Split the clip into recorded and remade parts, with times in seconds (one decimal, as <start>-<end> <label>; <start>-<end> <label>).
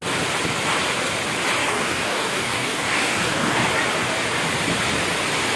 0.0-1.6 recorded; 1.6-3.7 remade; 3.7-5.6 recorded